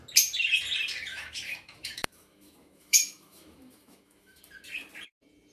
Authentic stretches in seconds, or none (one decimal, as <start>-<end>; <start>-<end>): 0.0-1.1; 4.4-5.5